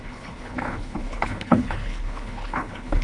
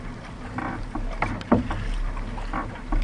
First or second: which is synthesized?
first